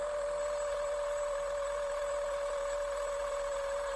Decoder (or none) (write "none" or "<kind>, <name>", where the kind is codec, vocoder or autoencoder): vocoder, BigVGAN v2